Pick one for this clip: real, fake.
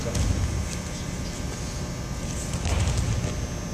real